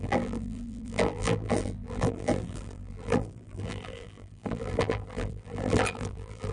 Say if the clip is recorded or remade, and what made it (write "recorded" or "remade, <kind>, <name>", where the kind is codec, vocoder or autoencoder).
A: remade, vocoder, BigVGAN v2